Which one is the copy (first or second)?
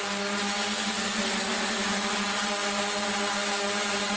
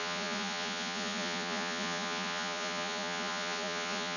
second